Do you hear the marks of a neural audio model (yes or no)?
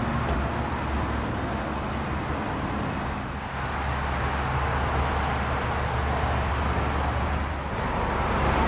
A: no